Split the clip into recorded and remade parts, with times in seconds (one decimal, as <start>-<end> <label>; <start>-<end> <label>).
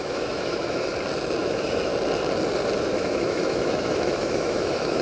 0.0-0.9 remade; 0.9-1.4 recorded; 1.4-1.9 remade; 1.9-2.8 recorded; 2.8-5.0 remade